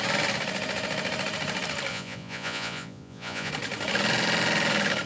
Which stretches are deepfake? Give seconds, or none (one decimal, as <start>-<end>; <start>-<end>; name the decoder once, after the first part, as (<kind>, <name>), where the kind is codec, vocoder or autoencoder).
1.9-3.5 (vocoder, Vocos)